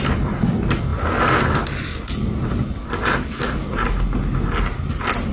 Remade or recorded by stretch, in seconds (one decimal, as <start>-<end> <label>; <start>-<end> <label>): 0.0-5.3 recorded